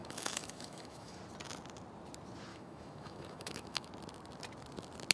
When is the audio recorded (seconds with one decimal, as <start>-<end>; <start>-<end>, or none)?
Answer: 1.2-2.5; 3.9-5.1